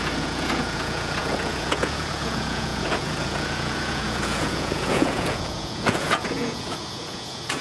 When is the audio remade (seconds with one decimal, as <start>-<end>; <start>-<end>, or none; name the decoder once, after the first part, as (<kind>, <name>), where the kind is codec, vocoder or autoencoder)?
0.0-7.6 (vocoder, Vocos)